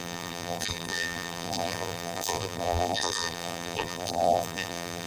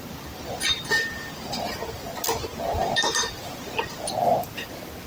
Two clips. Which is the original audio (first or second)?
second